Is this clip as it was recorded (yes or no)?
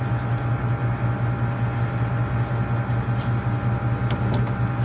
yes